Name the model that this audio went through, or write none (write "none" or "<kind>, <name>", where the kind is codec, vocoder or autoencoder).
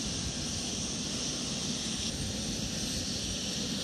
none